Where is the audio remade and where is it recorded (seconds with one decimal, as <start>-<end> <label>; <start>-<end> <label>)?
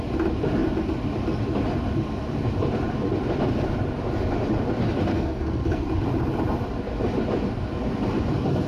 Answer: 0.0-5.1 recorded; 5.1-5.8 remade; 5.8-8.7 recorded